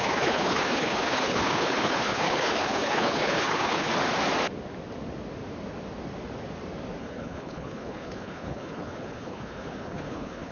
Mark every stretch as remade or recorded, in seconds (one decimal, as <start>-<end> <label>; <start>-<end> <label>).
0.0-3.9 remade; 3.9-7.0 recorded; 7.0-10.5 remade